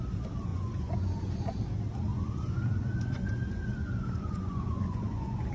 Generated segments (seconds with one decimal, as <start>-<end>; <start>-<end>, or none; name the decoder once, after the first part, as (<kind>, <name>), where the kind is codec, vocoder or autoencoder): 0.5-1.5 (vocoder, Vocos); 2.1-5.5